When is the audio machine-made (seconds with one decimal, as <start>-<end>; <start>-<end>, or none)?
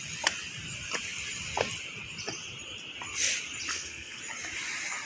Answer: 3.7-4.2